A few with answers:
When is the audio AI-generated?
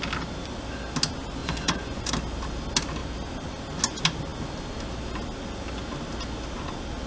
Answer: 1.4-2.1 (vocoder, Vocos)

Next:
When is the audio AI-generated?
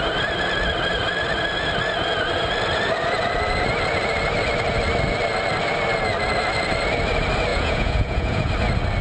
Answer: 7.5-8.5 (vocoder, Vocos)